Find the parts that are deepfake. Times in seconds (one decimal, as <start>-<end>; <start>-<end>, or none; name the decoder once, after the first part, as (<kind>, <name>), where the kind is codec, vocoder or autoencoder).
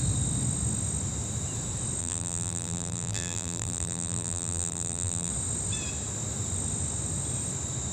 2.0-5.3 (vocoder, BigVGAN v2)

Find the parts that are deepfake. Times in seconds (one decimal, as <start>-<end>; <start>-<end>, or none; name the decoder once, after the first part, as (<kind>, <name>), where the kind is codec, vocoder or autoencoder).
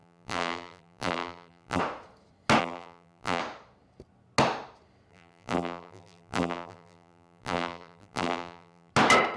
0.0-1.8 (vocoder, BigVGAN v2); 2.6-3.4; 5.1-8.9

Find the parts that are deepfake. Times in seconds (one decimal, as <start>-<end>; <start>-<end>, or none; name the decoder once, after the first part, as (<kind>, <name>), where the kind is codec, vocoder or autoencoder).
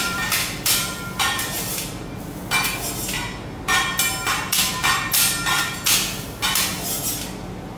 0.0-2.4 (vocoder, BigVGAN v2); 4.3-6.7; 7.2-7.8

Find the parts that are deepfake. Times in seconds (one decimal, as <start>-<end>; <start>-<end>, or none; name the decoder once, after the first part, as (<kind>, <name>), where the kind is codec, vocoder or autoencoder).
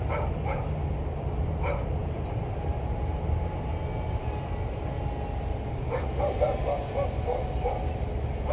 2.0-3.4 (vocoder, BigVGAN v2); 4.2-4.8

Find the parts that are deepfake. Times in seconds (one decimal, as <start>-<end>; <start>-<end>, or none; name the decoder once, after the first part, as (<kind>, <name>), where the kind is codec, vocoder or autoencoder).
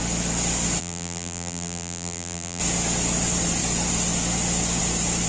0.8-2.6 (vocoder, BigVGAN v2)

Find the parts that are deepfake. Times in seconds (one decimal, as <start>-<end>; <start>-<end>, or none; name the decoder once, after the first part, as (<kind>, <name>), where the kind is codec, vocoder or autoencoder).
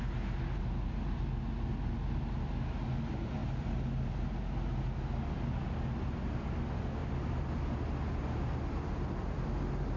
none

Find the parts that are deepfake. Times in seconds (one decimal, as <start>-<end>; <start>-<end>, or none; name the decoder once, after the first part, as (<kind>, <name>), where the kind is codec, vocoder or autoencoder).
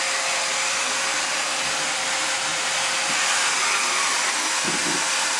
0.5-1.3 (vocoder, BigVGAN v2); 2.5-3.2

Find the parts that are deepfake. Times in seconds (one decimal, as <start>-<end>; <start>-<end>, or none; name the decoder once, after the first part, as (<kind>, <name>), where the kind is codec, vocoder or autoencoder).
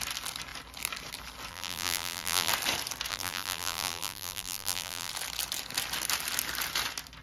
1.5-2.5 (vocoder, BigVGAN v2); 3.1-5.1